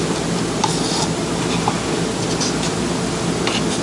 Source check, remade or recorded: recorded